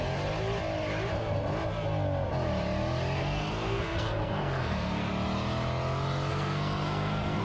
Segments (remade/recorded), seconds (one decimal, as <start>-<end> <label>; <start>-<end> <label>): 0.0-3.2 recorded; 3.2-5.1 remade; 5.1-6.3 recorded; 6.3-7.4 remade